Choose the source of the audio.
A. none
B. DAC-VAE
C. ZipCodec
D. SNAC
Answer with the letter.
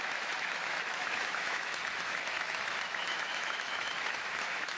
B